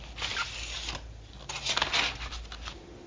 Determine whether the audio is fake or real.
real